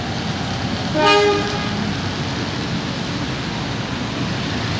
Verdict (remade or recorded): recorded